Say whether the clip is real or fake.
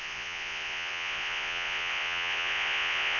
fake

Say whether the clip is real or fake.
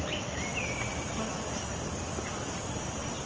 real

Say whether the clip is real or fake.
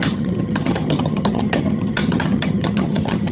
fake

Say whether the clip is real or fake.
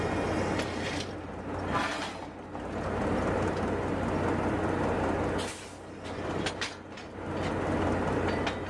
real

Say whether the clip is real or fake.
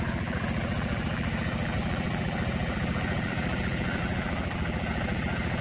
fake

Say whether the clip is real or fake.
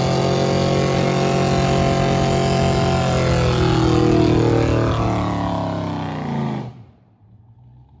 real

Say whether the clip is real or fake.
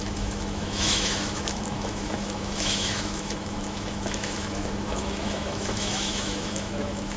fake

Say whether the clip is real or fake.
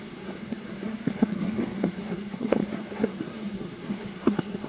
fake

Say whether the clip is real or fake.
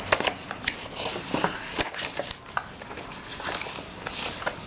real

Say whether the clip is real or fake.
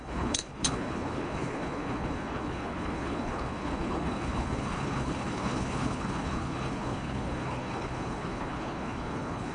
fake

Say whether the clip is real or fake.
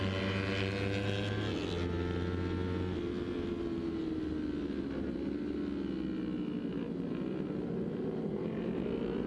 real